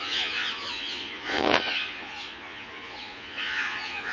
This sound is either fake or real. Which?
fake